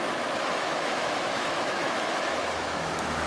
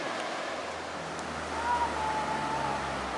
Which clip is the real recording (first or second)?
second